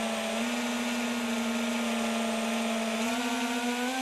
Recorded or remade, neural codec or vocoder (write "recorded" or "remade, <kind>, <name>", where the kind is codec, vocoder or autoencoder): recorded